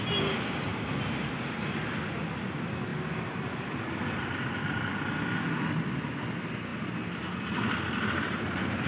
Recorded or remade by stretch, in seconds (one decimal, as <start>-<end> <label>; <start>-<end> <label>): 0.0-8.9 recorded